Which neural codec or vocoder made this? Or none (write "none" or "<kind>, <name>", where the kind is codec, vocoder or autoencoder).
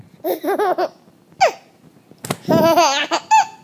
none